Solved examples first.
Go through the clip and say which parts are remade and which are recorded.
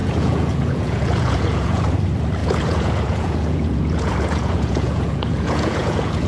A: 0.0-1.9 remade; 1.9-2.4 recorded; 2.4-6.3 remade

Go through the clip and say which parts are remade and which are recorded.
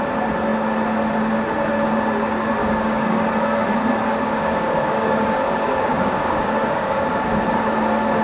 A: 0.0-2.6 recorded; 2.6-3.3 remade; 3.3-4.1 recorded; 4.1-7.1 remade; 7.1-8.2 recorded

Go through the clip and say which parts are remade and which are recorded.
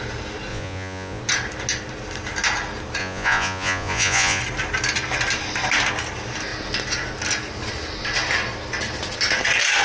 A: 0.0-0.5 recorded; 0.5-1.2 remade; 1.2-3.0 recorded; 3.0-4.4 remade; 4.4-9.8 recorded